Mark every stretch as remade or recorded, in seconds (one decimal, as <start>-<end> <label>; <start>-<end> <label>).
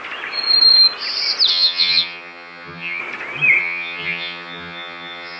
0.0-1.5 recorded; 1.5-3.0 remade; 3.0-3.6 recorded; 3.6-5.4 remade